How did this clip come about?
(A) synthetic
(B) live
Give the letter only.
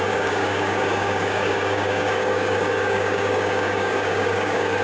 A